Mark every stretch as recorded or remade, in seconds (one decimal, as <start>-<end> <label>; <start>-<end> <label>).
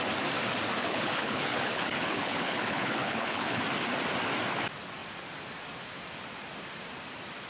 0.0-0.8 recorded; 0.8-3.6 remade; 3.6-7.5 recorded